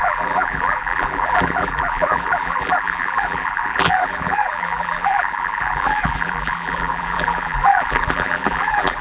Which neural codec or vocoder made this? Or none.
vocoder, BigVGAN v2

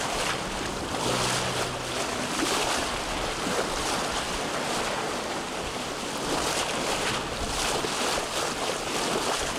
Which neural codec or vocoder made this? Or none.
none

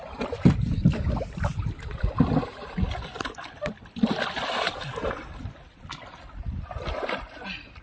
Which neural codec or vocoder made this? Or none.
none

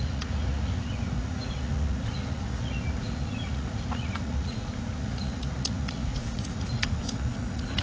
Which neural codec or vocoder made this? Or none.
vocoder, Vocos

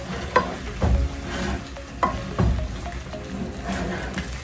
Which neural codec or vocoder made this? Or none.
none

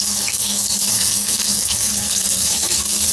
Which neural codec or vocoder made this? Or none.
codec, SNAC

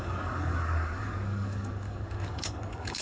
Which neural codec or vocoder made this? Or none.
codec, DAC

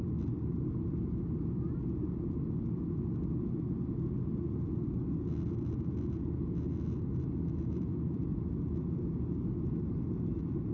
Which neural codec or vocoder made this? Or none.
none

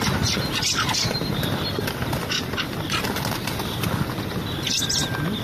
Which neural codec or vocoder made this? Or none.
none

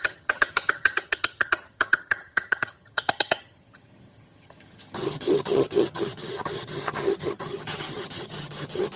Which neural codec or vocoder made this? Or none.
vocoder, HiFi-GAN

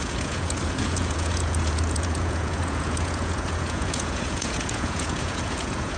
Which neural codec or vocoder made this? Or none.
vocoder, Vocos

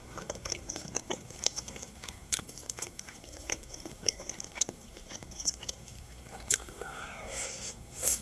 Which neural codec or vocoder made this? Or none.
codec, SNAC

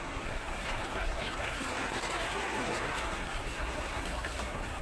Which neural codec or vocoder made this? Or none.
codec, SNAC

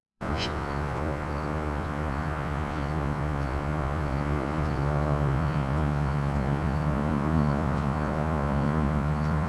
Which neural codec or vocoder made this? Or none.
vocoder, Vocos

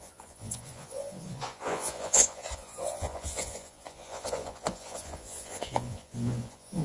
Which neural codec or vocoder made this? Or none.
vocoder, Vocos